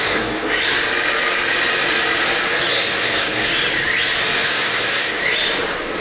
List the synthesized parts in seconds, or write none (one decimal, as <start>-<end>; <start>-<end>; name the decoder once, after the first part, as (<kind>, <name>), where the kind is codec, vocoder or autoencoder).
0.0-0.6 (codec, SNAC); 2.7-3.5; 4.5-5.2

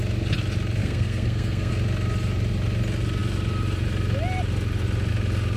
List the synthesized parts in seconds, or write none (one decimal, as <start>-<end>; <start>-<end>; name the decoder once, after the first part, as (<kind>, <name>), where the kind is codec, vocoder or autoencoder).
0.8-1.7 (codec, SNAC)

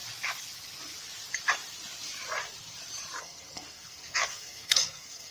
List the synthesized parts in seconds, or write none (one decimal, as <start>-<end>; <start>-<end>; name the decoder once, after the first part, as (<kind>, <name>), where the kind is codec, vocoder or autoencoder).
3.2-5.3 (codec, SNAC)

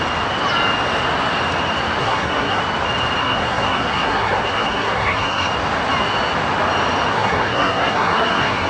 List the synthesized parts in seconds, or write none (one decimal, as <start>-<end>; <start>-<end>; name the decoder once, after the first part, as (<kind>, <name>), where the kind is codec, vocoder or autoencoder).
2.0-2.6 (codec, SNAC); 3.2-5.5; 7.1-8.7

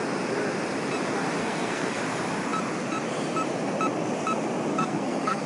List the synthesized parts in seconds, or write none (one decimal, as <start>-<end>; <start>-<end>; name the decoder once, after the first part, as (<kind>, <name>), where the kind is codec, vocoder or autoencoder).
1.4-2.0 (codec, SNAC); 4.7-5.5

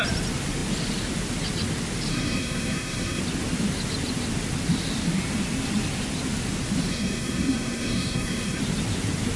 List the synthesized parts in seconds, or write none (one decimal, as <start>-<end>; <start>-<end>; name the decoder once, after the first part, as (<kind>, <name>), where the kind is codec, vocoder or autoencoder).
2.1-3.2 (codec, SNAC); 6.9-8.6

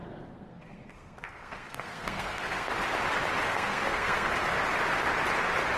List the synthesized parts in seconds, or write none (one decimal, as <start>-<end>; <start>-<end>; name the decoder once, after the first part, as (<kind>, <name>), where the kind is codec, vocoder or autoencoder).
0.0-2.7 (codec, SNAC); 3.5-4.3